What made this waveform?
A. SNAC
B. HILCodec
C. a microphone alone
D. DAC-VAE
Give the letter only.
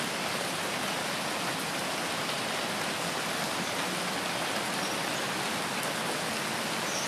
C